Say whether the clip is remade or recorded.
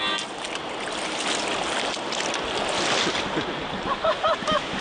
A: recorded